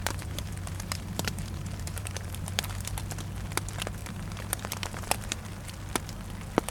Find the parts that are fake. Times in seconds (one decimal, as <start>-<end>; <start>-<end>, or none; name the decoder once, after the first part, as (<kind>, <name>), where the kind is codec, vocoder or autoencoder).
0.0-3.0 (vocoder, BigVGAN v2); 4.0-5.4